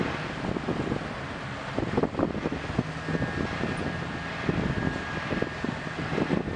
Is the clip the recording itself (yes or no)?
yes